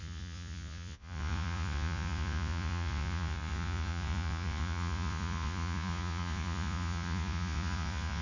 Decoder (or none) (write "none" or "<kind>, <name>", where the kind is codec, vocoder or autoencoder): vocoder, Vocos